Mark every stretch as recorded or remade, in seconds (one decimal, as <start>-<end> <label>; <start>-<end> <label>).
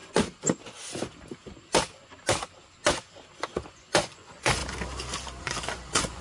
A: 0.0-3.7 recorded; 3.7-4.6 remade; 4.6-5.4 recorded; 5.4-6.2 remade